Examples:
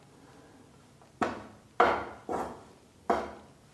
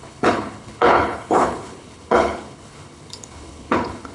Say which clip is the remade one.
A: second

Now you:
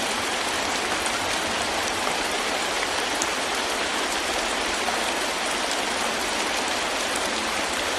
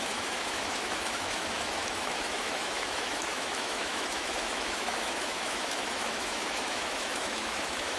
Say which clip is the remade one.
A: second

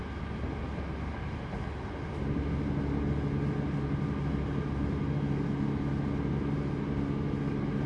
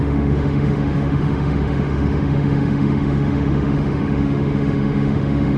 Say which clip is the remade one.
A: second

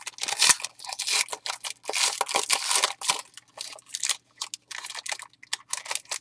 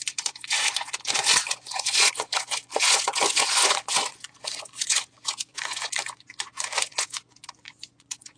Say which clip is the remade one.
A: second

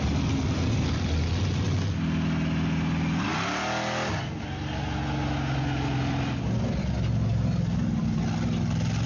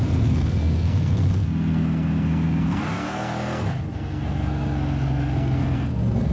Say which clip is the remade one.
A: second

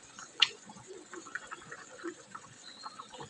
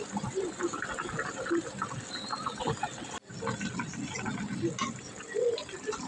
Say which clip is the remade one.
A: first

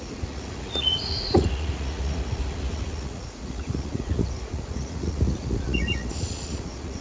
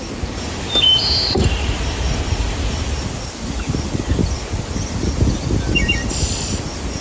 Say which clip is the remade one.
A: first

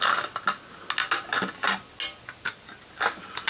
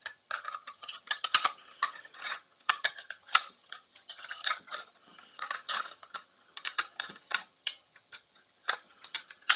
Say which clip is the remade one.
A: second